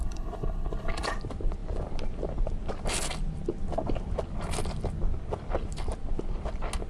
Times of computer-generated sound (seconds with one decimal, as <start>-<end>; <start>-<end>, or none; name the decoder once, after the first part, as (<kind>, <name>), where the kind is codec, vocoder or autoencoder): 0.0-1.1 (codec, HILCodec)